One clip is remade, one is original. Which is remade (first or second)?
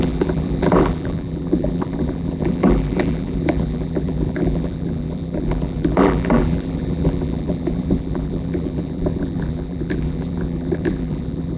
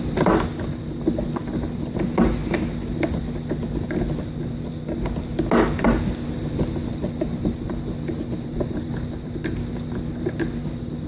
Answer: first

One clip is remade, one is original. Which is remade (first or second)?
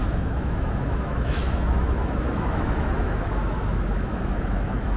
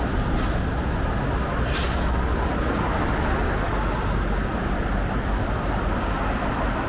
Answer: first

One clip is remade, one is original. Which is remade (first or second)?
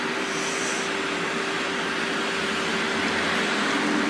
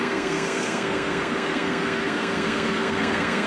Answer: second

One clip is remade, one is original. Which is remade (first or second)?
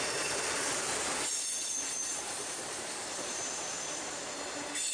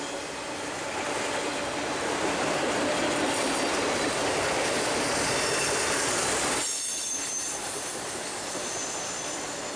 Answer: first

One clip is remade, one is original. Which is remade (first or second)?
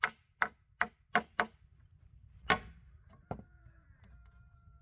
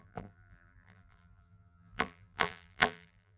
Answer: second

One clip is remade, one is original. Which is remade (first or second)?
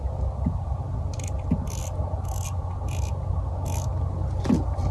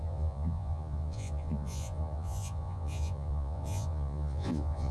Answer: second